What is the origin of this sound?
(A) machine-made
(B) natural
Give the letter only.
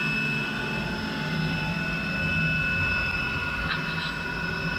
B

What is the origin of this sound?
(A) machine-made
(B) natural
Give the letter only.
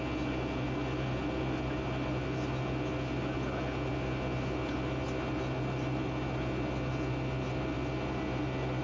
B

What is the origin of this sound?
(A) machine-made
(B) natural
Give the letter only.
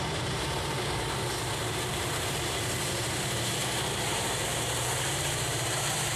A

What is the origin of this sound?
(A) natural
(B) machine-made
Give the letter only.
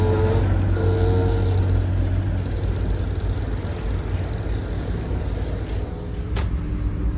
A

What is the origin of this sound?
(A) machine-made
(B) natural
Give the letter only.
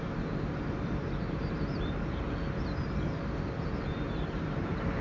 A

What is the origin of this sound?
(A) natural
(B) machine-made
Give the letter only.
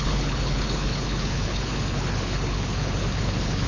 B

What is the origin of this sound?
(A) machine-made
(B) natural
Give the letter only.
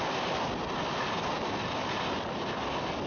B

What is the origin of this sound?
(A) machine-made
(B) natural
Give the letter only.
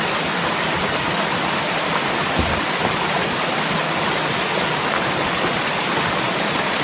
B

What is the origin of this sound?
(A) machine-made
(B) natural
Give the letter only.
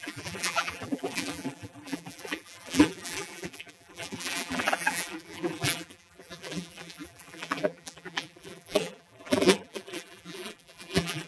A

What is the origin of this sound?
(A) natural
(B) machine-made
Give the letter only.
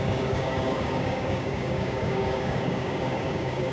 B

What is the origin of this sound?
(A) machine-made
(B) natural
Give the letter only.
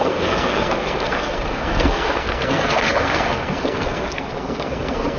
A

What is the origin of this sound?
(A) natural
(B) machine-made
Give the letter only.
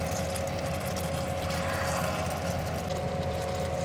A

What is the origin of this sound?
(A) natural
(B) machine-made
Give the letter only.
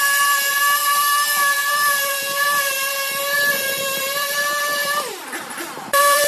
B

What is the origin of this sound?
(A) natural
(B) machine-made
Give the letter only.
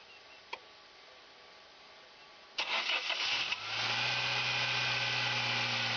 A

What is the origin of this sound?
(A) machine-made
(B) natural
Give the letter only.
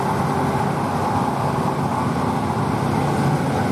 B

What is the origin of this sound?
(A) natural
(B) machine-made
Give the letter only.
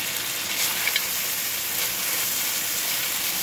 A